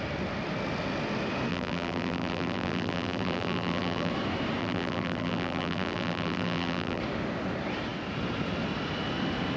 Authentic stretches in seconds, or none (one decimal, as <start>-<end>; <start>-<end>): 0.0-1.5; 4.1-4.6; 7.0-9.6